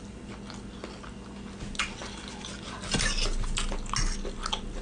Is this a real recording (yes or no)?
yes